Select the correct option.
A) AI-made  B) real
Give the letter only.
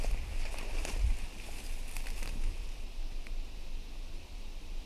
B